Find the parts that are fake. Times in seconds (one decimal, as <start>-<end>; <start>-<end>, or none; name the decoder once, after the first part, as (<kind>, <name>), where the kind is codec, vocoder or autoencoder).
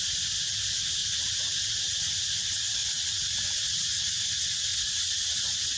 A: 2.8-4.3 (vocoder, Vocos); 4.7-5.8